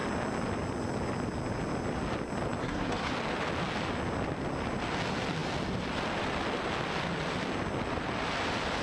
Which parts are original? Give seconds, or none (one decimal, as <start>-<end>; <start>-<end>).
0.0-2.6; 3.1-8.8